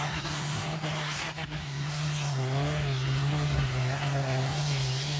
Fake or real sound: fake